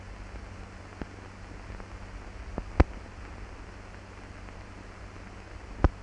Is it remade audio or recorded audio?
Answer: recorded